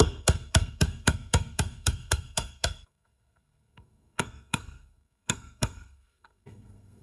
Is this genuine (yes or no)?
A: no